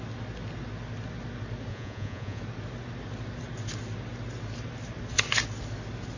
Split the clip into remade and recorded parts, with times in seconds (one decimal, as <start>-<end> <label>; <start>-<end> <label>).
0.0-1.7 recorded; 1.7-2.4 remade; 2.4-6.2 recorded